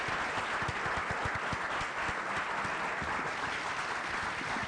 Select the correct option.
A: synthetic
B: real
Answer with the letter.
B